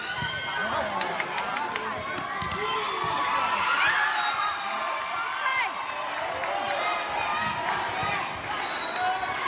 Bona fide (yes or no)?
yes